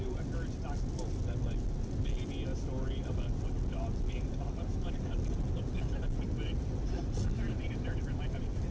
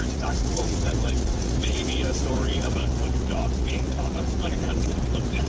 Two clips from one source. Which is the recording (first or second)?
first